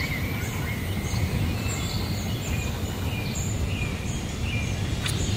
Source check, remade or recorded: recorded